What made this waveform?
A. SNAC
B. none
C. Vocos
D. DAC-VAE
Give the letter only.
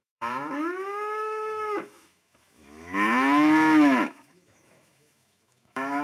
D